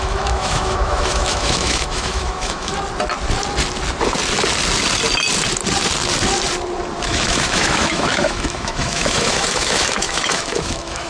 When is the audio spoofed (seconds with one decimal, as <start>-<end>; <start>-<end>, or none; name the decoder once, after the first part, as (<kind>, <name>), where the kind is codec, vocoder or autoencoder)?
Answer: 0.0-2.7 (autoencoder, DAC-VAE); 7.0-11.1